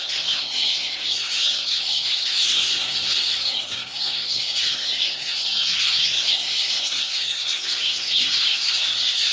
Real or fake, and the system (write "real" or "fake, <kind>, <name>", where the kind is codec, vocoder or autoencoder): fake, codec, SNAC